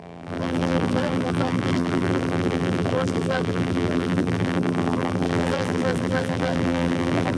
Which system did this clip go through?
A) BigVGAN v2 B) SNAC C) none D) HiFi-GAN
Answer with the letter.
A